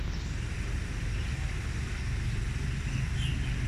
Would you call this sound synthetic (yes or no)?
no